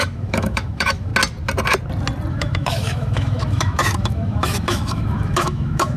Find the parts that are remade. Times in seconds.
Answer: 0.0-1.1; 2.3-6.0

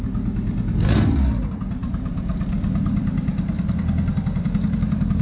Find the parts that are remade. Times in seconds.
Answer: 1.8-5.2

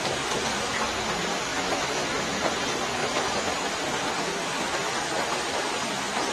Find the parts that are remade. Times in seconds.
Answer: 1.5-2.4; 3.0-3.5